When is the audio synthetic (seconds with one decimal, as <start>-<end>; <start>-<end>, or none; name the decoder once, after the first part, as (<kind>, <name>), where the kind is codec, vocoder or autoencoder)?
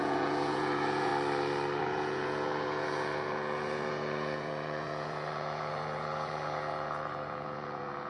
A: 0.0-1.1 (vocoder, Vocos); 1.8-8.1